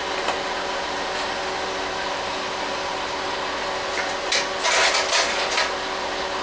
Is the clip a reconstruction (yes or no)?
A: no